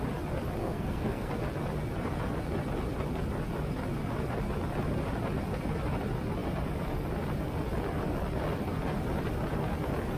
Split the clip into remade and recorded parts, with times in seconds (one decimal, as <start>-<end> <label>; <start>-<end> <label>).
0.0-0.6 recorded; 0.6-1.3 remade; 1.3-10.2 recorded

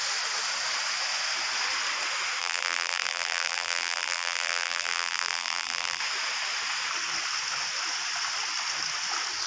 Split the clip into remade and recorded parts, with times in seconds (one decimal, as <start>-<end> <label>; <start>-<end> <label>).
0.0-2.4 recorded; 2.4-6.0 remade; 6.0-9.5 recorded

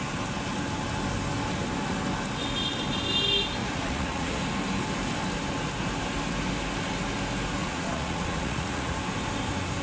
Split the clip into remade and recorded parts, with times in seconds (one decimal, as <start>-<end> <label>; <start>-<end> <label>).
0.0-3.6 recorded; 3.6-4.4 remade; 4.4-7.6 recorded; 7.6-9.0 remade; 9.0-9.8 recorded

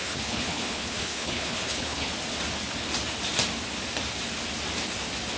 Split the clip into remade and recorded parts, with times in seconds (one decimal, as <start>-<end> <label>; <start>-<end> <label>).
0.0-2.1 remade; 2.1-5.4 recorded

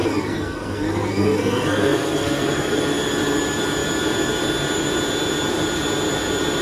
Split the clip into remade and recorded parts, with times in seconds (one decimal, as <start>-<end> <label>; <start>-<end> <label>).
0.0-2.8 remade; 2.8-6.6 recorded

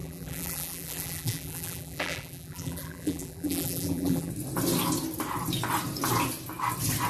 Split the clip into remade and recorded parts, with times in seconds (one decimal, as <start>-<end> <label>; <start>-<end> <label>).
0.0-4.3 remade; 4.3-7.1 recorded

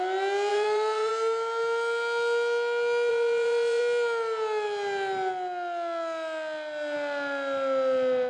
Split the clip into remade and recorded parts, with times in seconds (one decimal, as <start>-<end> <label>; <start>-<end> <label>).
0.0-0.5 recorded; 0.5-1.1 remade; 1.1-3.1 recorded; 3.1-3.8 remade; 3.8-8.3 recorded

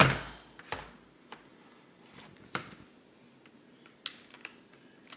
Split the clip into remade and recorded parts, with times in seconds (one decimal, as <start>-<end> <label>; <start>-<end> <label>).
0.0-5.2 recorded